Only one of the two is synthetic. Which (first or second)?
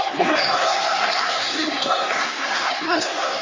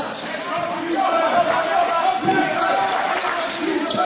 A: first